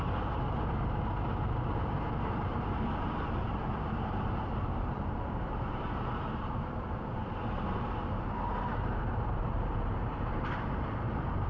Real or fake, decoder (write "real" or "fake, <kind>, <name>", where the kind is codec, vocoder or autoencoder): fake, vocoder, BigVGAN v2